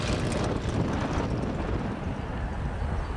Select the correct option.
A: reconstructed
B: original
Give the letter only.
B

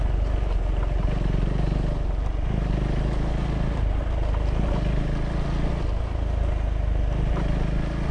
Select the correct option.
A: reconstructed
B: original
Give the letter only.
B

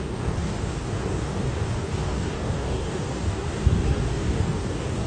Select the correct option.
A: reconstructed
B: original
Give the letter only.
A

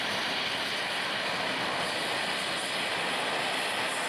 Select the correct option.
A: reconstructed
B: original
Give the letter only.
B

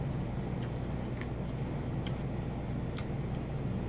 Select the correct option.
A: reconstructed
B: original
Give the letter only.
B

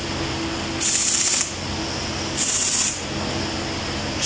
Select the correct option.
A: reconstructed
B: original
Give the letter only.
B